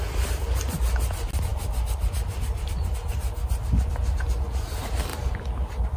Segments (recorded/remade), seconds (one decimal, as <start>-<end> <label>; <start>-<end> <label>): 0.0-6.0 recorded